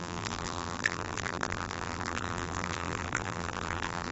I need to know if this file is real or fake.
fake